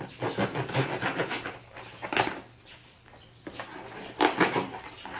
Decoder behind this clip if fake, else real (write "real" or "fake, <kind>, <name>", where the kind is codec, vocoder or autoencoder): real